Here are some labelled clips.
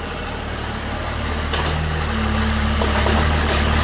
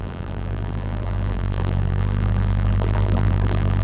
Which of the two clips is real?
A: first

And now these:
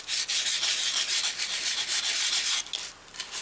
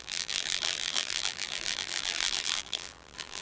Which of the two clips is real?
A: first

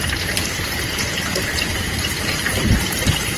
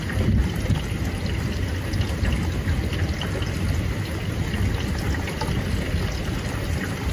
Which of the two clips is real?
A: second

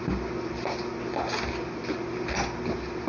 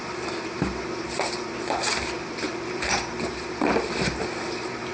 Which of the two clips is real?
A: first